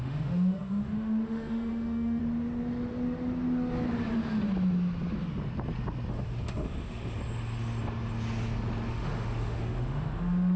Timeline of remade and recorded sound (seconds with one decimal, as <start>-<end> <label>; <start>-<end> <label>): 0.0-2.2 remade; 2.2-6.1 recorded; 6.1-7.2 remade; 7.2-8.9 recorded; 8.9-10.6 remade